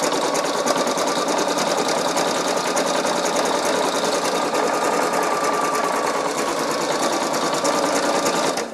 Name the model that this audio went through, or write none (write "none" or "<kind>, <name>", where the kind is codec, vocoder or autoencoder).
none